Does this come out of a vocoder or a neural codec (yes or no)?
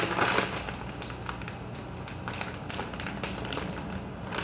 no